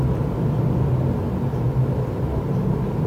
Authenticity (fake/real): real